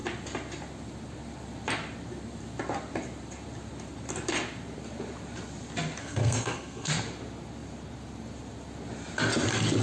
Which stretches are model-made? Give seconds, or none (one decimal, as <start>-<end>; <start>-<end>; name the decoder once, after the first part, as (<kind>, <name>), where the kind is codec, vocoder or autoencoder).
6.0-6.9 (codec, SNAC)